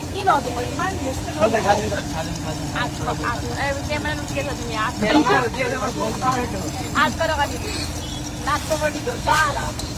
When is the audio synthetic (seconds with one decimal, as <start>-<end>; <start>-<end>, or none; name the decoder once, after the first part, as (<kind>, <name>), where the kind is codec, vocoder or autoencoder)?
0.0-2.1 (codec, SNAC); 5.1-6.4; 8.7-10.0